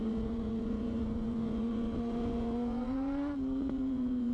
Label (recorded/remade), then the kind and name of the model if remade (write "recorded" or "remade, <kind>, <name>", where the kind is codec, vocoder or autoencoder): remade, vocoder, Vocos